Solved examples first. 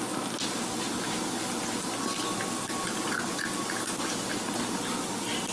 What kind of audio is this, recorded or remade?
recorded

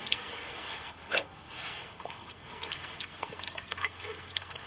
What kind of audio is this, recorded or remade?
remade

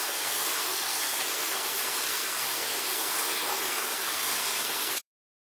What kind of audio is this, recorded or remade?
remade